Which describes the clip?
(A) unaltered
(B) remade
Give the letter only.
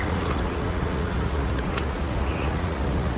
B